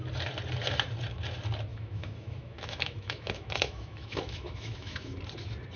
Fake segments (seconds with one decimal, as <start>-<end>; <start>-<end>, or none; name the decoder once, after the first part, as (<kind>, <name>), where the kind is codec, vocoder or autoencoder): 1.7-5.2 (autoencoder, DAC-VAE)